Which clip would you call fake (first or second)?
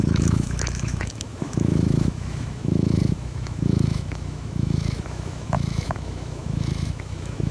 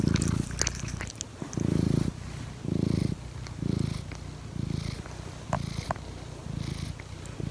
first